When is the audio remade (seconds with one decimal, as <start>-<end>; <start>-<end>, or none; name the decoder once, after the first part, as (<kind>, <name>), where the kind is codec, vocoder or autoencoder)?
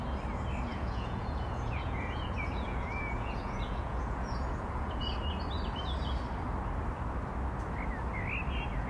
0.7-5.2 (vocoder, Vocos)